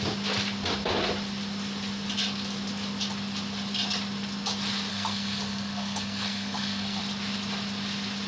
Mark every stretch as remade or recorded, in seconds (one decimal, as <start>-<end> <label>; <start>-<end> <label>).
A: 0.0-4.9 recorded; 4.9-7.0 remade; 7.0-8.3 recorded